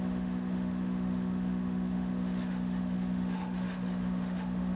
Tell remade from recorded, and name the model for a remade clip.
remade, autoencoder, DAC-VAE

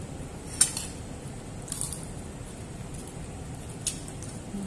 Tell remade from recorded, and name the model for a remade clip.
recorded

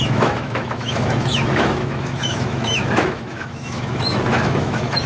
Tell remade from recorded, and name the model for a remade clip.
remade, autoencoder, DAC-VAE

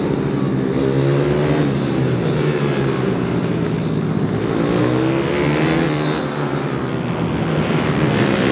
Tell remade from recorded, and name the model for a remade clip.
recorded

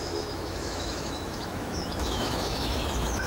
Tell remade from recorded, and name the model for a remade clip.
remade, autoencoder, DAC-VAE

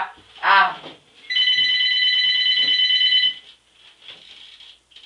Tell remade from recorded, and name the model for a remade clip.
recorded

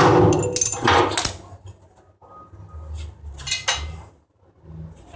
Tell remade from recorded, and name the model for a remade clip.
recorded